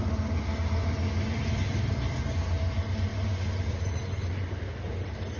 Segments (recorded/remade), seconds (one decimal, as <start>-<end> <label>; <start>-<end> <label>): 0.0-3.1 recorded; 3.1-4.5 remade; 4.5-5.4 recorded